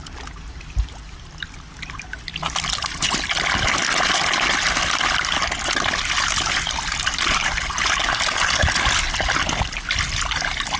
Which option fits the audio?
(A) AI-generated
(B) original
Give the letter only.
B